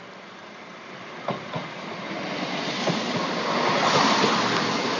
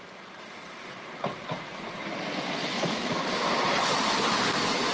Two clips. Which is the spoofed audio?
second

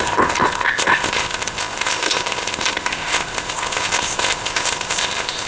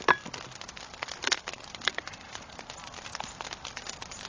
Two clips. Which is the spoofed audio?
first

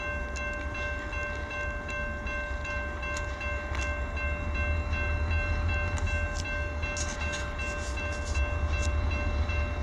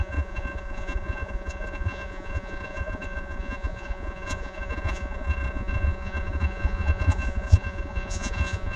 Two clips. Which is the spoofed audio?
second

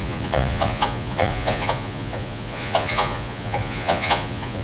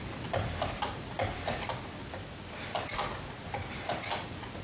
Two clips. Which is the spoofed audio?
first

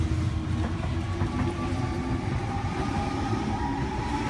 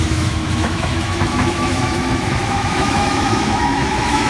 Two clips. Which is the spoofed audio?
second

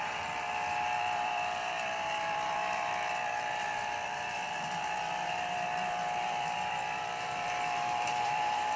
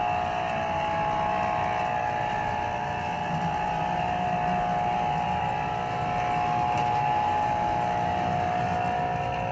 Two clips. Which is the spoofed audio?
first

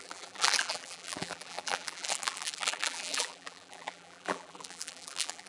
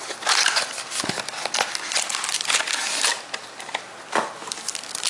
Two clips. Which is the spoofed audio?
first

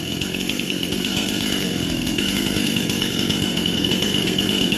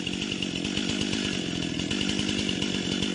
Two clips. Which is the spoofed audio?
first